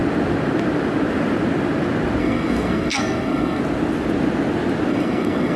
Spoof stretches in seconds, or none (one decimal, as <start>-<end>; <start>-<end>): 2.2-3.6; 4.9-5.6